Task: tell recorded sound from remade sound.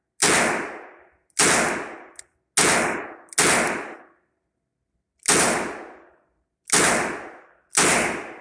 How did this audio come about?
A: recorded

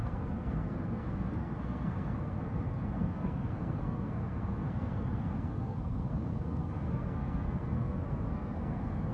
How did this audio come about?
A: remade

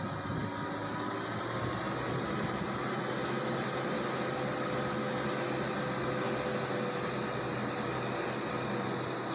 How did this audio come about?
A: recorded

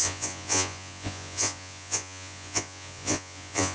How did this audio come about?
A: remade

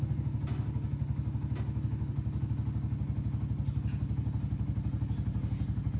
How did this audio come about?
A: recorded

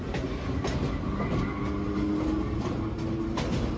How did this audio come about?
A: recorded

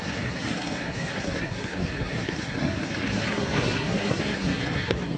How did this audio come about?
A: remade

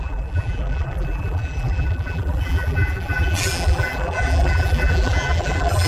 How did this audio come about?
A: remade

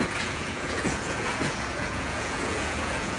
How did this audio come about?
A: remade